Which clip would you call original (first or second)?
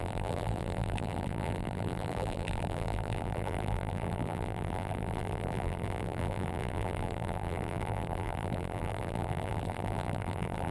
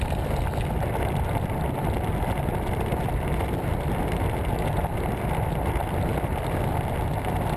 second